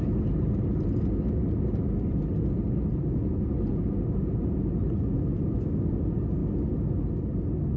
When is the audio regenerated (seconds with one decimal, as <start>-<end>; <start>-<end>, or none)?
none